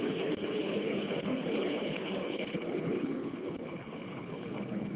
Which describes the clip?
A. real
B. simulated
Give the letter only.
B